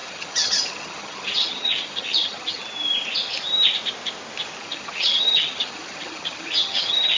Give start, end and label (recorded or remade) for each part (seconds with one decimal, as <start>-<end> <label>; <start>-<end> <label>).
0.0-2.6 remade; 2.6-4.6 recorded; 4.6-7.2 remade